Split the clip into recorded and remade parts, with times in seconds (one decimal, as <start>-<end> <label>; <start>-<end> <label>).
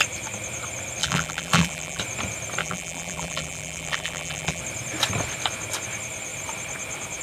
0.0-1.0 recorded; 1.0-2.0 remade; 2.0-2.6 recorded; 2.6-4.6 remade; 4.6-7.2 recorded